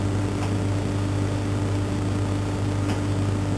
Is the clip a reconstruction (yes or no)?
no